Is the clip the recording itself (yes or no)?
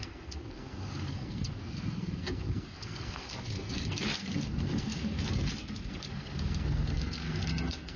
no